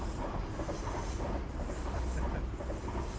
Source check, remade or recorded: recorded